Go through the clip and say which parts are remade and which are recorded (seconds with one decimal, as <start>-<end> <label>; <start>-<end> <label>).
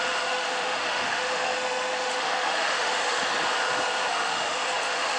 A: 0.0-3.0 remade; 3.0-4.1 recorded; 4.1-5.2 remade